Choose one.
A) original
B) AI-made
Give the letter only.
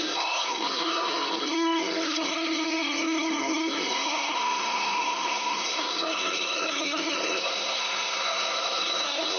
B